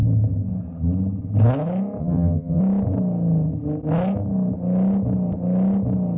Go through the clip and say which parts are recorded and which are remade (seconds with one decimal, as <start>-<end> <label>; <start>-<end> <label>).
0.0-2.0 recorded; 2.0-2.6 remade; 2.6-6.2 recorded